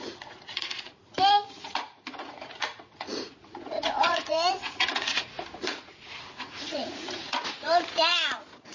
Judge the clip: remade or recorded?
remade